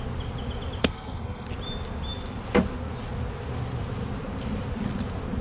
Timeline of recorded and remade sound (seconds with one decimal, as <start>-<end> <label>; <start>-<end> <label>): 0.0-0.8 recorded; 0.8-1.5 remade; 1.5-5.4 recorded